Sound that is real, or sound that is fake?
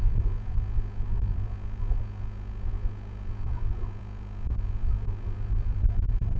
fake